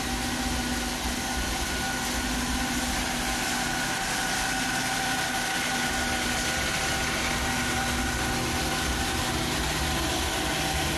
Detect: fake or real real